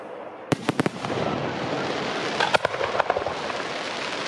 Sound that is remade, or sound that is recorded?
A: remade